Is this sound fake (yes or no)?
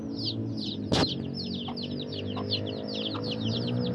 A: no